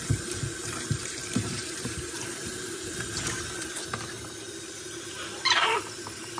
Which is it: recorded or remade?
remade